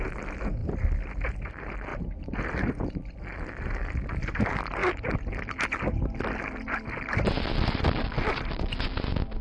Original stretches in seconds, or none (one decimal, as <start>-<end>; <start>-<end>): 0.0-9.4